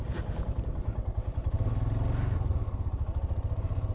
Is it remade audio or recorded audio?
recorded